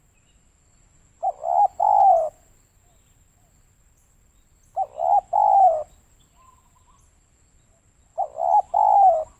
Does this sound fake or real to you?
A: real